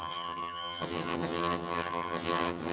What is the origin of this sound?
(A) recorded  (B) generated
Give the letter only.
B